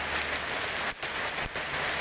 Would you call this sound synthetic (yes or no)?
no